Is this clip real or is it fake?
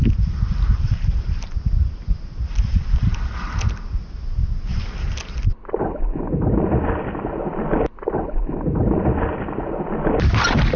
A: real